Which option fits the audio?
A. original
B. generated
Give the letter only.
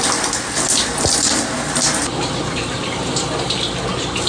A